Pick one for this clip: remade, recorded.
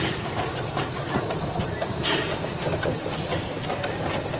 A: recorded